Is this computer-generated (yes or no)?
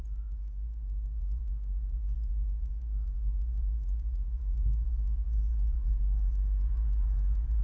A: yes